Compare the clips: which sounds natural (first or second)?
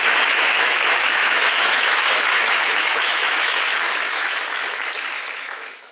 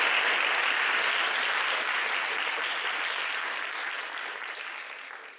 second